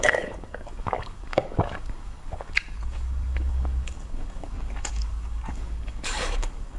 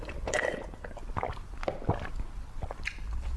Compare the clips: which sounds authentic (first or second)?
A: second